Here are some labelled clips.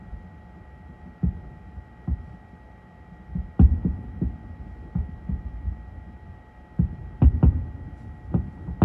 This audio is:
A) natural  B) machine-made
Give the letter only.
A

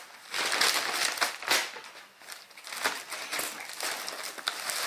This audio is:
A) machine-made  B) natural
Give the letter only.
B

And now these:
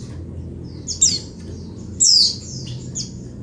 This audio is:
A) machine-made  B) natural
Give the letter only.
B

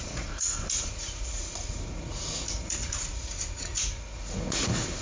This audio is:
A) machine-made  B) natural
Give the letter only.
A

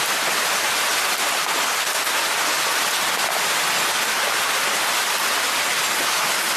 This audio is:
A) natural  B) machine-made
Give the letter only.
A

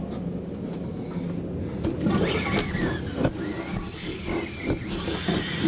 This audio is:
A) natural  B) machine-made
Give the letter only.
A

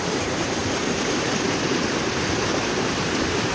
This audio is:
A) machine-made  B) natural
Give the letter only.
A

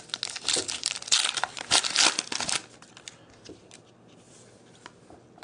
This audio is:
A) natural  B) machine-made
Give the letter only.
A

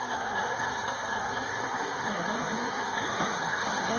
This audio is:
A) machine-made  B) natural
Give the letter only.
A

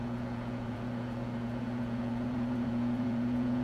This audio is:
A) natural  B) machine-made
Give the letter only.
B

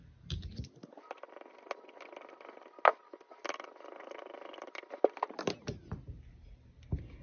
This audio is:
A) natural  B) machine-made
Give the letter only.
A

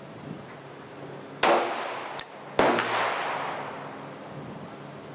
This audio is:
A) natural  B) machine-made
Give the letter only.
A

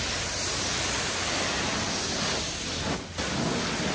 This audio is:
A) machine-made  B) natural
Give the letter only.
B